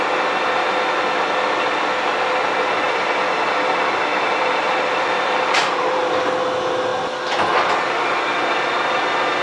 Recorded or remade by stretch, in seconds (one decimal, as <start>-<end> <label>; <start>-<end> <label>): 0.0-4.1 recorded; 4.1-6.1 remade; 6.1-9.4 recorded